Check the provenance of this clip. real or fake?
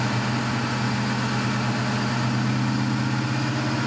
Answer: real